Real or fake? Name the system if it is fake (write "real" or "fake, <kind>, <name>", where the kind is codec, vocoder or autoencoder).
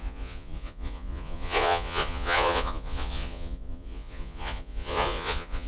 fake, vocoder, Vocos